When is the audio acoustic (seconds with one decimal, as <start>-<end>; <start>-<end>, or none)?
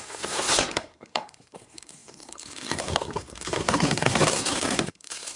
none